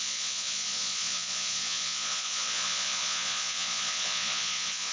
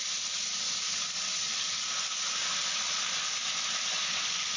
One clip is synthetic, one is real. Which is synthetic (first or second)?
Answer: first